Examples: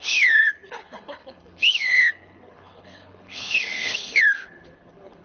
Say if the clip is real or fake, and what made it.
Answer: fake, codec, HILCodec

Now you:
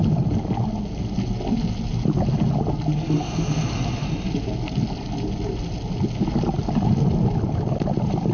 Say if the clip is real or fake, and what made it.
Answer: real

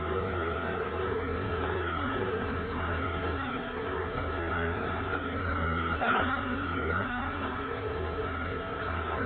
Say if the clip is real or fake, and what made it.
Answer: fake, codec, SNAC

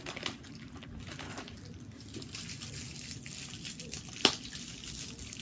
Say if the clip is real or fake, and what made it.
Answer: real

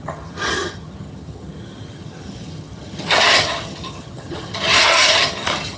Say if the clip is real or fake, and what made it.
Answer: fake, vocoder, HiFi-GAN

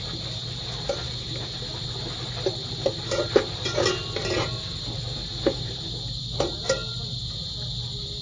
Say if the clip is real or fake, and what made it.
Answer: real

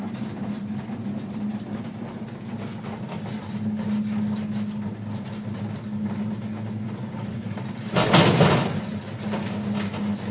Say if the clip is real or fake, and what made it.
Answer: real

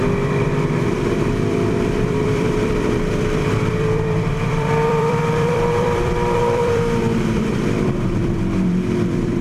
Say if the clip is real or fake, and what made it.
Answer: fake, vocoder, BigVGAN v2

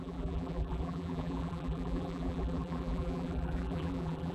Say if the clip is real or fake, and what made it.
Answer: fake, vocoder, BigVGAN v2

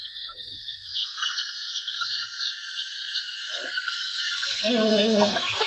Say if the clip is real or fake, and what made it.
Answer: fake, codec, SNAC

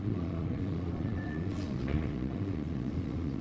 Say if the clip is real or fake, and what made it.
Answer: fake, vocoder, Vocos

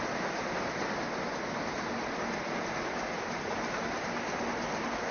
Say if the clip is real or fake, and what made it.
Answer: real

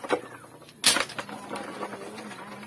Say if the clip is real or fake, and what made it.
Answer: real